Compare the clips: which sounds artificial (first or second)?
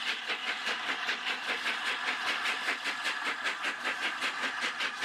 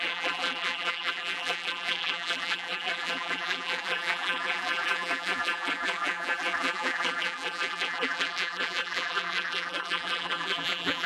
second